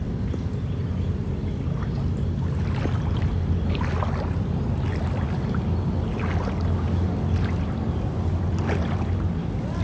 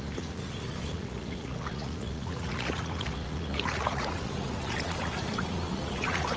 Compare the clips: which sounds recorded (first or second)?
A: first